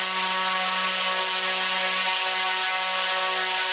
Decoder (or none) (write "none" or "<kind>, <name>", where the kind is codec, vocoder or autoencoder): none